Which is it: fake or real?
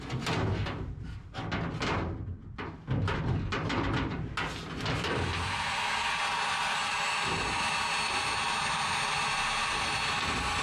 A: real